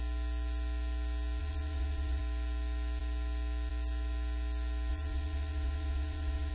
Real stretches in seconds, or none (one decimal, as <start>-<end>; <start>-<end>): 0.0-1.4; 2.2-4.9